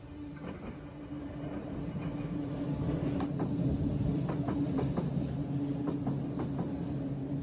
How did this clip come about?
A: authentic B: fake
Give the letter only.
A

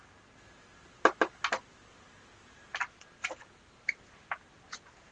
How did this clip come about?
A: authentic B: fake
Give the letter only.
A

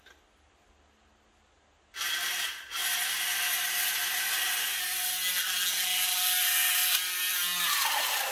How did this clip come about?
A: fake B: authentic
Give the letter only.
B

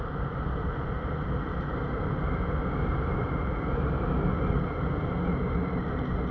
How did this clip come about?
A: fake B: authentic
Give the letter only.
B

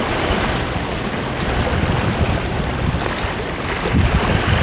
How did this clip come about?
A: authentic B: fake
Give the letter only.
A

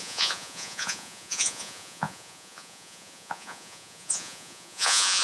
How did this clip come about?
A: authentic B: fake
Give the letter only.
B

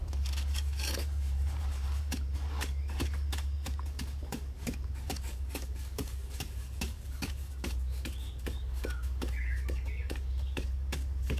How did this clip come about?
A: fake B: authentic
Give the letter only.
A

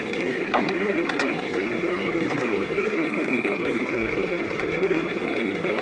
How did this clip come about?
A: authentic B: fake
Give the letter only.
B